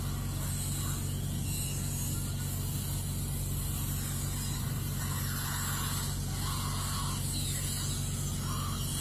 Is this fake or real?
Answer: real